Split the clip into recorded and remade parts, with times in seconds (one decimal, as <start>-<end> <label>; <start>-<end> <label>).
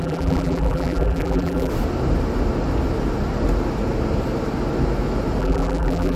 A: 0.0-1.7 remade; 1.7-5.4 recorded; 5.4-6.2 remade